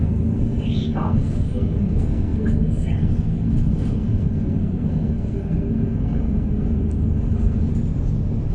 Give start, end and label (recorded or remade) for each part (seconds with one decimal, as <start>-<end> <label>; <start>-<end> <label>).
0.0-7.7 remade; 7.7-8.5 recorded